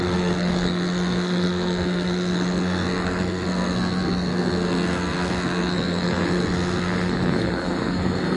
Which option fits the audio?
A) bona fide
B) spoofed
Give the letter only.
B